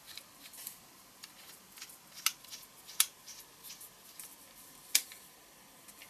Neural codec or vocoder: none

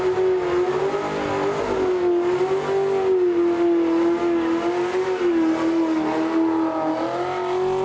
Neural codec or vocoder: none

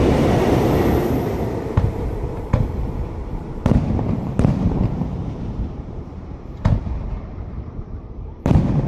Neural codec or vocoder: vocoder, BigVGAN v2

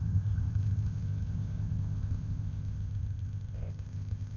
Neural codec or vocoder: codec, ZipCodec